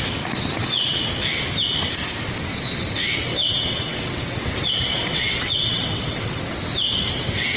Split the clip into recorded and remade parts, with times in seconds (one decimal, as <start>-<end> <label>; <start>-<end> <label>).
0.0-0.6 recorded; 0.6-1.1 remade; 1.1-3.3 recorded; 3.3-6.4 remade; 6.4-7.6 recorded